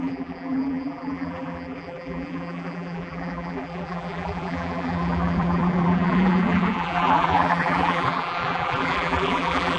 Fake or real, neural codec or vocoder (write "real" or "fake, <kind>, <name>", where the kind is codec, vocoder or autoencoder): fake, vocoder, BigVGAN v2